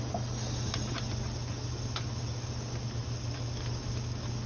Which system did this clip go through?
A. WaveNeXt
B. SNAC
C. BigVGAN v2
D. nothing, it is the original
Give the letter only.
D